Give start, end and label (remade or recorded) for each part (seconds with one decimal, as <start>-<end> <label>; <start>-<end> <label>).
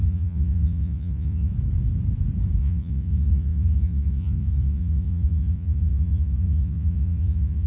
0.0-1.5 remade; 1.5-2.6 recorded; 2.6-7.7 remade